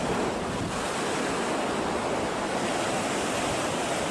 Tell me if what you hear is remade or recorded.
recorded